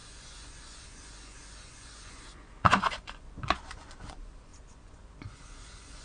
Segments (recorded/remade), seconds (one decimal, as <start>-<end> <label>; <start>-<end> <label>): 0.0-6.0 remade